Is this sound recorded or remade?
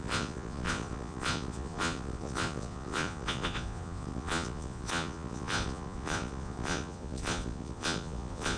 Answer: remade